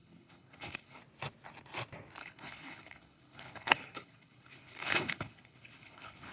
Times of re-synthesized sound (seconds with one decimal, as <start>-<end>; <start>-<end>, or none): 0.0-1.0; 2.2-6.3